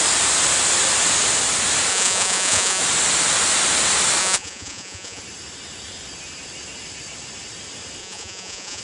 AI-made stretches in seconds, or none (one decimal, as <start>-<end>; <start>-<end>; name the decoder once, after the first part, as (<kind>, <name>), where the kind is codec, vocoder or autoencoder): 1.9-2.8 (vocoder, Vocos); 4.2-5.2; 8.0-8.8